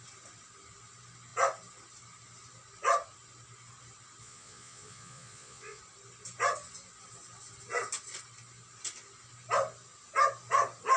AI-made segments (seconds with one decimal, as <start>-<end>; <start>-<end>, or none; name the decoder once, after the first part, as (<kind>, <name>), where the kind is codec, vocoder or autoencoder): 4.2-5.8 (vocoder, Vocos)